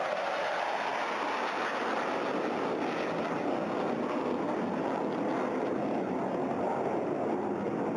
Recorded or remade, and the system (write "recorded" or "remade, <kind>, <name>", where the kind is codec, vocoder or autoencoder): recorded